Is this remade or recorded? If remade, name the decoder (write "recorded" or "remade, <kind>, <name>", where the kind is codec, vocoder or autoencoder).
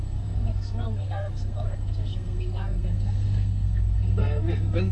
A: remade, codec, SNAC